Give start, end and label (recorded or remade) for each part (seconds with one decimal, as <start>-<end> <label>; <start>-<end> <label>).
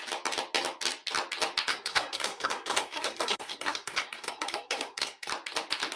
0.0-1.7 recorded; 1.7-5.3 remade; 5.3-6.0 recorded